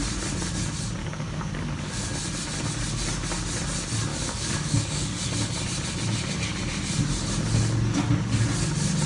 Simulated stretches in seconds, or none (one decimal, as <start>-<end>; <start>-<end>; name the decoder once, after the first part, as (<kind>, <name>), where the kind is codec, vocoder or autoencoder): 1.0-2.0 (codec, DAC); 4.1-5.2